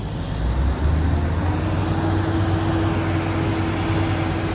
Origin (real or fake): real